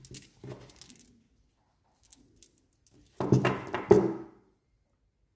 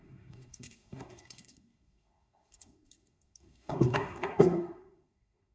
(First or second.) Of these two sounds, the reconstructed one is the second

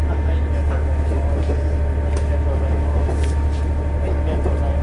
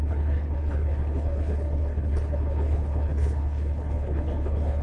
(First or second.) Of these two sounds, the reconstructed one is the second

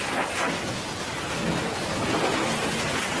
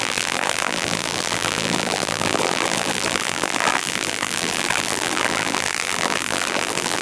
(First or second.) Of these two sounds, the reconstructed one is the second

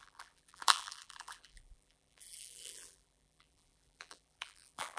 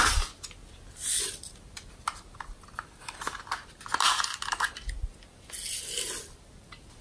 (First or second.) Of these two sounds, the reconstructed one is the first